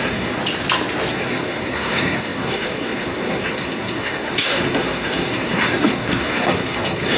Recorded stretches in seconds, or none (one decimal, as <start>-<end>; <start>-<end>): 0.4-1.1